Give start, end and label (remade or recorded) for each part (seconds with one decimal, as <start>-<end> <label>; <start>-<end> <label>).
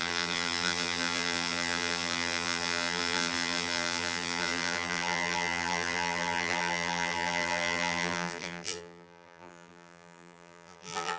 0.0-11.2 remade